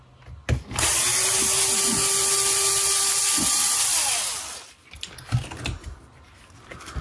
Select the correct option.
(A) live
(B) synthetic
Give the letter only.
A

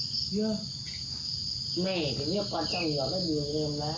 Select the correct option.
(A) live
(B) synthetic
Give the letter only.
A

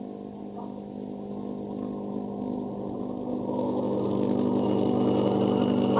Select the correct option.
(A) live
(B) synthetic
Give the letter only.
A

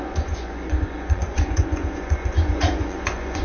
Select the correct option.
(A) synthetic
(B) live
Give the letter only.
A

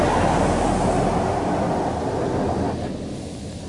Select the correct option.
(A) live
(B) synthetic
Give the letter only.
A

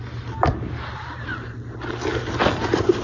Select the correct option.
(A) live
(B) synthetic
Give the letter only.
A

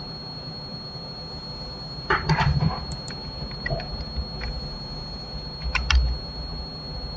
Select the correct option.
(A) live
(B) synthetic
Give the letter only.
B